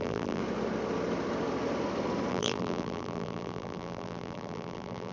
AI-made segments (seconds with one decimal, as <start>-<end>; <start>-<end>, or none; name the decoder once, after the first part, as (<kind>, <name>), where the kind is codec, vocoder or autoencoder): 0.0-0.4 (vocoder, BigVGAN v2); 2.3-5.1